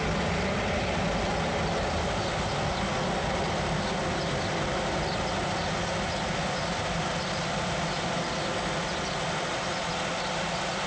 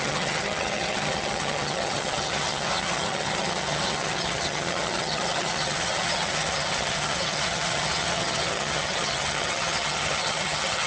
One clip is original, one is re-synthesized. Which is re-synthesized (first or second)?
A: second